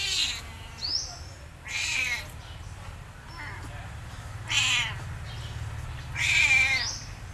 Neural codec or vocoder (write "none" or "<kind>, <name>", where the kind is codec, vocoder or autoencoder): none